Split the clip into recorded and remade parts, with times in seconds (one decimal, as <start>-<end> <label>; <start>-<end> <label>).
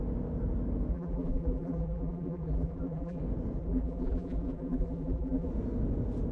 0.0-0.9 recorded; 0.9-3.2 remade; 3.2-3.6 recorded; 3.6-5.5 remade; 5.5-6.3 recorded